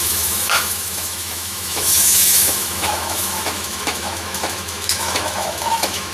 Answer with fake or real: fake